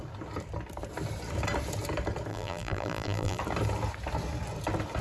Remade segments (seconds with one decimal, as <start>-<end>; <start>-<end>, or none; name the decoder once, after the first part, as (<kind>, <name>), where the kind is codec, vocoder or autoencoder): 2.3-3.4 (vocoder, BigVGAN v2)